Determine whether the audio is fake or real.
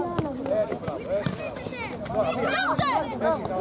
real